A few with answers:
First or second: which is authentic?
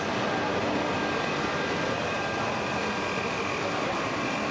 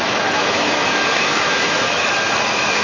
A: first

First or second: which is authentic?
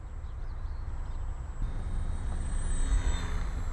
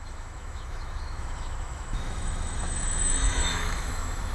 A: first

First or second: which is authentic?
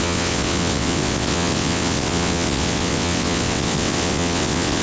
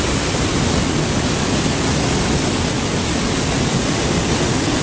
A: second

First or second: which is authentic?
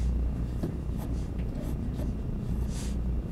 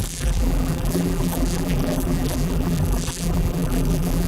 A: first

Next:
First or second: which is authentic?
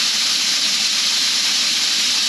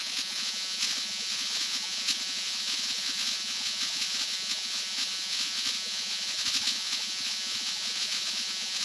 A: first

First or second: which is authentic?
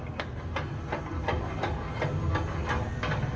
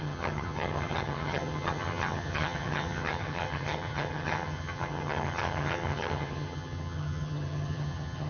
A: first